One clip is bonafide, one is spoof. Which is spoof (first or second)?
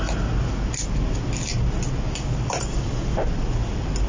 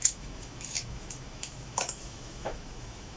second